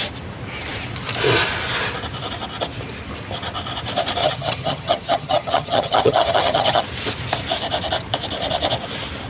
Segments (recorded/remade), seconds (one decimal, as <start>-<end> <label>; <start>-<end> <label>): 0.0-4.2 recorded; 4.2-6.8 remade; 6.8-9.3 recorded